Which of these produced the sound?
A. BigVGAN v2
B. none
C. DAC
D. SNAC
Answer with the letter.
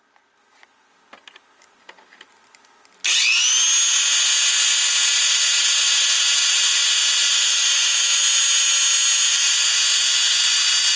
B